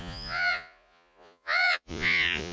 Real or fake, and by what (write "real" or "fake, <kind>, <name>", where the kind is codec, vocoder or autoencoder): fake, vocoder, Vocos